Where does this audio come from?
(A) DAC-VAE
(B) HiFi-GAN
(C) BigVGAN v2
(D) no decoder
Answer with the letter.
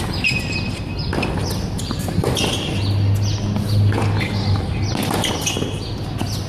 D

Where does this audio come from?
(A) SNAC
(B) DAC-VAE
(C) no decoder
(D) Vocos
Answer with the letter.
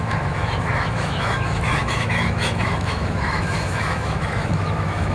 B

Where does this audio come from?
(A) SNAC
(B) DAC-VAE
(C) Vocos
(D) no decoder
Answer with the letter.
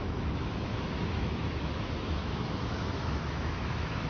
B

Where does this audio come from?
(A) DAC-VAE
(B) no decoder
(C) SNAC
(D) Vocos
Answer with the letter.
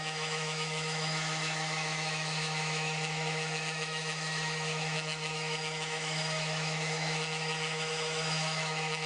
A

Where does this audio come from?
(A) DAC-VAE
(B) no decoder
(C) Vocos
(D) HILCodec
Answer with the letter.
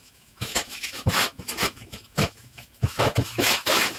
A